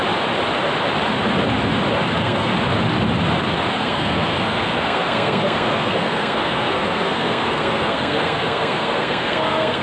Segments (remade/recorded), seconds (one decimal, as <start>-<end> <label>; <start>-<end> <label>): 0.0-2.1 recorded; 2.1-2.5 remade; 2.5-3.7 recorded; 3.7-9.8 remade